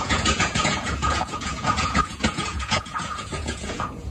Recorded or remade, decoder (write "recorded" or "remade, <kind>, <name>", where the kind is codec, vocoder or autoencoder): remade, vocoder, Vocos